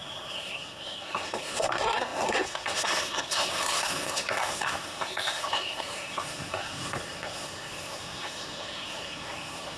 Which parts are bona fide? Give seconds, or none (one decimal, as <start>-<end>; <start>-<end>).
none